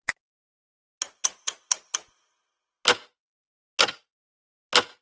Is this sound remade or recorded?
recorded